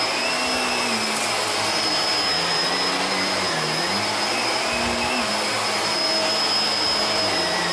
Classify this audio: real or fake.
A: real